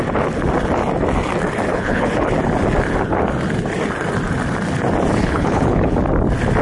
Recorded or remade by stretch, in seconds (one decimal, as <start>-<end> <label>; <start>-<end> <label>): 0.0-1.7 recorded; 1.7-2.3 remade; 2.3-5.2 recorded; 5.2-6.0 remade; 6.0-6.6 recorded